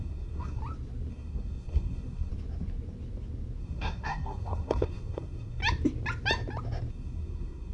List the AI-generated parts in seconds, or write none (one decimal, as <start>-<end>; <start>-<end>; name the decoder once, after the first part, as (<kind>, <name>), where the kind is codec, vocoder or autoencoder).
0.0-0.6 (codec, SNAC); 1.1-2.3; 3.6-5.6; 6.9-7.7